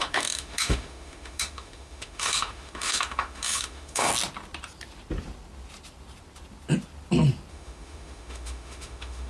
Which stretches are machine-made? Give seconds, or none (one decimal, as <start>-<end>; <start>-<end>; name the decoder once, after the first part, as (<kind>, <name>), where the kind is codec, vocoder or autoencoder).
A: 0.0-4.1 (autoencoder, DAC-VAE); 7.5-9.3